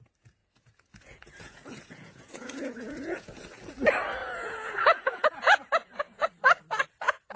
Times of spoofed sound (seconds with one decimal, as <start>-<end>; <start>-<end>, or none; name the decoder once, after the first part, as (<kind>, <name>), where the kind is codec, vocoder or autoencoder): 0.4-3.7 (vocoder, Vocos); 4.2-6.3